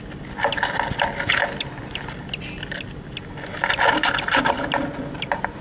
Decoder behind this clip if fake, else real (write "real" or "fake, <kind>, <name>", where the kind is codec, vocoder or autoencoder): real